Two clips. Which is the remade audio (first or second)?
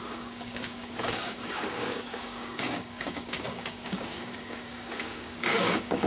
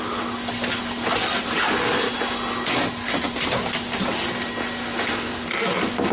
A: first